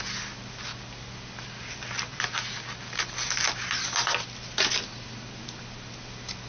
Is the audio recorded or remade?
recorded